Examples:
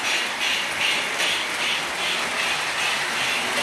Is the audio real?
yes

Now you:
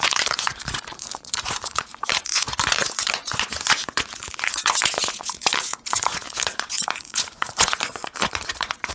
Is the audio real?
no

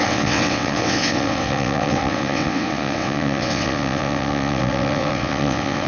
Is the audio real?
no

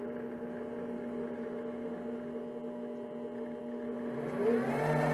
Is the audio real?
yes